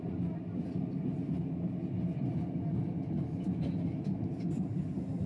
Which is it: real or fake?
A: real